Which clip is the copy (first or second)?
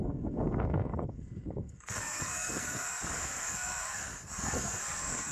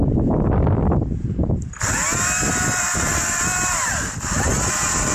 first